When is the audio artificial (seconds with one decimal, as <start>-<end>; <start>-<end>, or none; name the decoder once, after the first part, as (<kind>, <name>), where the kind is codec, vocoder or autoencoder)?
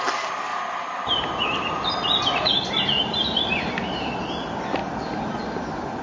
none